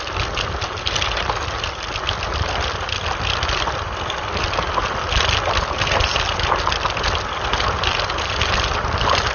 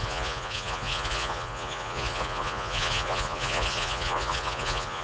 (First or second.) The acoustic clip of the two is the first